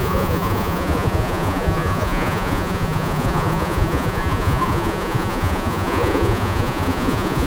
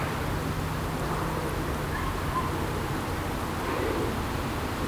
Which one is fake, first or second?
first